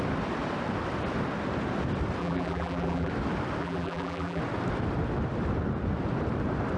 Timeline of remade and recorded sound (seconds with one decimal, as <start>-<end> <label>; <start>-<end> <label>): 0.0-2.2 recorded; 2.2-3.1 remade; 3.1-3.6 recorded; 3.6-4.4 remade; 4.4-6.8 recorded